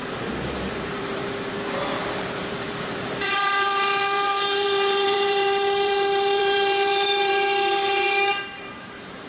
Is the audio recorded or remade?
remade